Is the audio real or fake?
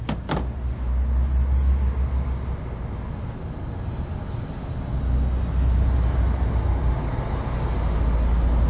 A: real